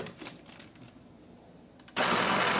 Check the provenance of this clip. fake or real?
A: real